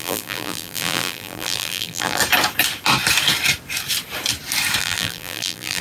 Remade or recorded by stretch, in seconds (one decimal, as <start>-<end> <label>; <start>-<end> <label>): 0.0-2.2 remade; 2.2-4.8 recorded; 4.8-5.8 remade